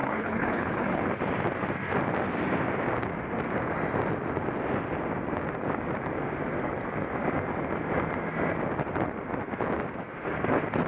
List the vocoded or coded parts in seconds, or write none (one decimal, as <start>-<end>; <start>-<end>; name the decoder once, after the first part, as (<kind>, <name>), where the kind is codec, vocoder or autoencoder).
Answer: 0.0-1.0 (codec, HILCodec)